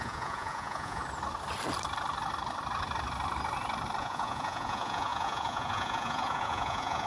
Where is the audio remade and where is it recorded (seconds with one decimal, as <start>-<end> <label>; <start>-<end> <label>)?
0.0-1.0 remade; 1.0-4.0 recorded; 4.0-7.1 remade